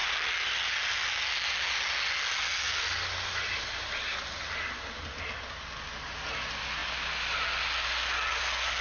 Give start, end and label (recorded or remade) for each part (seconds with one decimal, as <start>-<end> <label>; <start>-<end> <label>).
0.0-8.8 recorded